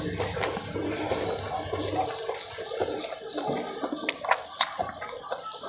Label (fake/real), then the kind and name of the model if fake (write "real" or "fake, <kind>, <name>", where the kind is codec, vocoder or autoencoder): real